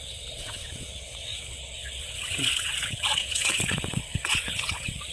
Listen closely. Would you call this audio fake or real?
fake